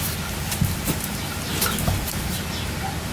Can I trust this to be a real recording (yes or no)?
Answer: yes